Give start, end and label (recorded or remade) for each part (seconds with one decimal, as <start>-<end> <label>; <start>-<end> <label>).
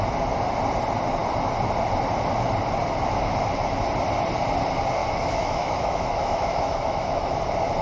0.0-5.0 recorded; 5.0-7.3 remade; 7.3-7.8 recorded